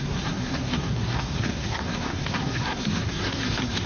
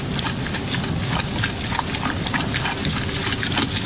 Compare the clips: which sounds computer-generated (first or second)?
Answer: first